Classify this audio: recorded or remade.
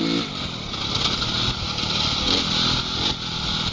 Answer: recorded